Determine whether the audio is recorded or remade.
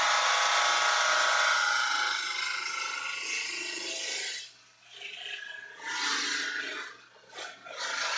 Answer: recorded